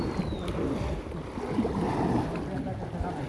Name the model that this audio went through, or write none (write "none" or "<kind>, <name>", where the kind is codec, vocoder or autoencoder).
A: none